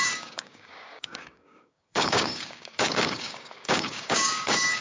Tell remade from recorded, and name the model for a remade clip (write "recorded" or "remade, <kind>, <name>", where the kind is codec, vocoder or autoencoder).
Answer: remade, codec, DAC